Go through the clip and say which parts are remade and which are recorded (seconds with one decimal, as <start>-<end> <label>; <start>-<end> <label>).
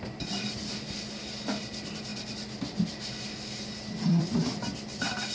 0.0-2.1 recorded; 2.1-4.4 remade; 4.4-5.3 recorded